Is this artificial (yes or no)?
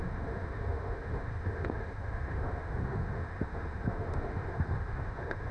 yes